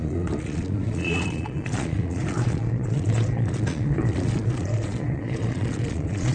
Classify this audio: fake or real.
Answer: fake